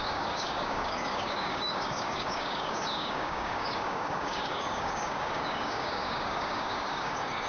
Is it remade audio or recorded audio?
remade